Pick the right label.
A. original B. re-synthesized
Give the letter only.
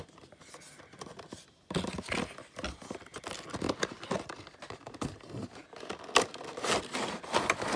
A